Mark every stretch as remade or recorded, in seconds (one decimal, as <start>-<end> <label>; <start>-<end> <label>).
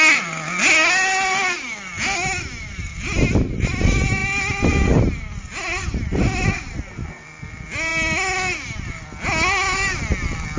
0.0-10.6 recorded